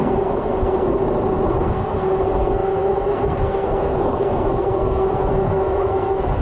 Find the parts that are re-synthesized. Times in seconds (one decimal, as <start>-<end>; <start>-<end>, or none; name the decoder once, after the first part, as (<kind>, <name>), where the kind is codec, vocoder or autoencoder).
0.0-1.0 (codec, SNAC); 1.5-6.4